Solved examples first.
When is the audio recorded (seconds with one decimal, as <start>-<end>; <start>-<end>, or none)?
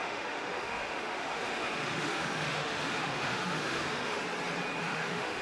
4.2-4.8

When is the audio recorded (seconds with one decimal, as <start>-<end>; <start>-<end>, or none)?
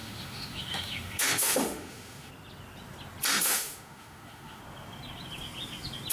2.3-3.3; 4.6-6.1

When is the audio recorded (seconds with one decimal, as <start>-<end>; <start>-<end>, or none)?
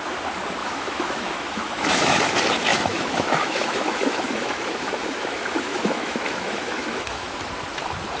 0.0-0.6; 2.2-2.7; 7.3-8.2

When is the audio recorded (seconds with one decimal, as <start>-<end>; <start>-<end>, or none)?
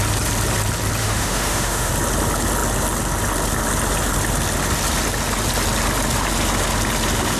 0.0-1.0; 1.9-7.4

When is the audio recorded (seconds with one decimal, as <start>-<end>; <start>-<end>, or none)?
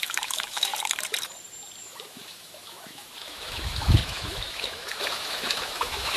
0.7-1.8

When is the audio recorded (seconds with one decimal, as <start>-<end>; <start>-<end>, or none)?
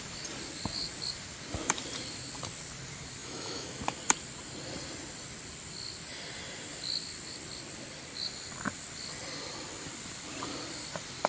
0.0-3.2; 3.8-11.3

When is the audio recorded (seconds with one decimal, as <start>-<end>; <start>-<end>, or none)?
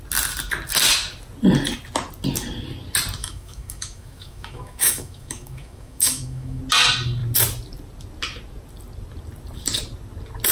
0.0-3.2; 6.6-10.5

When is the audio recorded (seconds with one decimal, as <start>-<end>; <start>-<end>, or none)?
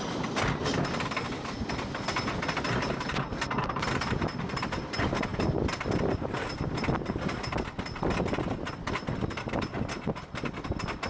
0.0-11.1